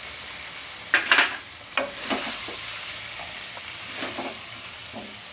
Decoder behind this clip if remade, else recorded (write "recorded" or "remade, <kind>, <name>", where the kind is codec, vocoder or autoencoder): recorded